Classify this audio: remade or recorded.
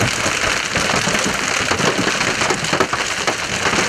recorded